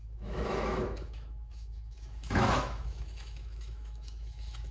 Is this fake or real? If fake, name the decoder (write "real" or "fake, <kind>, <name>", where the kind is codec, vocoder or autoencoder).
fake, autoencoder, DAC-VAE